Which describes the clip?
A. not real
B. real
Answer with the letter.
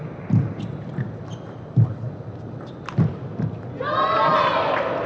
B